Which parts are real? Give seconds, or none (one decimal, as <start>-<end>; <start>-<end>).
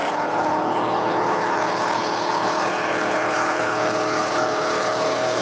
none